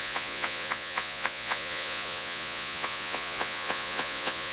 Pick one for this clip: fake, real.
fake